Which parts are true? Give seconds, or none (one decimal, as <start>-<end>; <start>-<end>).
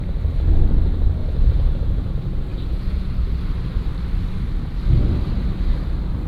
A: 0.0-1.2; 2.1-2.5; 3.3-6.3